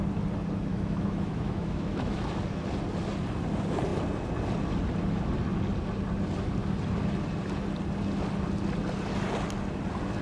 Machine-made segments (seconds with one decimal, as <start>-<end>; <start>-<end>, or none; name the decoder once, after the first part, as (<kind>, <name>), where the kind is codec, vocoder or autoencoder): 0.7-2.4 (autoencoder, DAC-VAE)